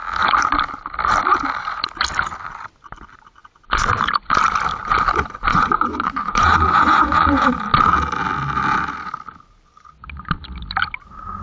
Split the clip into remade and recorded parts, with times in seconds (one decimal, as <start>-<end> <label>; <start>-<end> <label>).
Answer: 0.0-5.5 recorded; 5.5-7.6 remade; 7.6-11.4 recorded